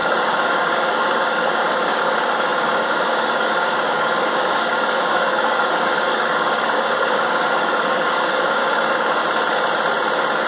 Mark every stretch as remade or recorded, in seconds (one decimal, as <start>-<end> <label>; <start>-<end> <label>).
0.0-9.2 remade; 9.2-10.5 recorded